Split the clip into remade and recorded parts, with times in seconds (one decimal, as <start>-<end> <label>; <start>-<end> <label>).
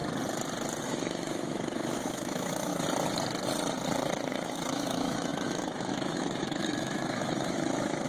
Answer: 0.0-0.8 recorded; 0.8-2.7 remade; 2.7-4.3 recorded; 4.3-8.1 remade